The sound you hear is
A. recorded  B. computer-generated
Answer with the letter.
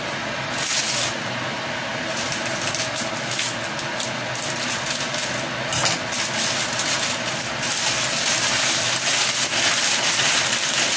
A